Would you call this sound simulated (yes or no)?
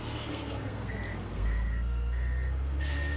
yes